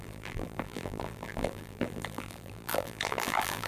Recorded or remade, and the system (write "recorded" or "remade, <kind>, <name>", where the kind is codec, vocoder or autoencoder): remade, vocoder, BigVGAN v2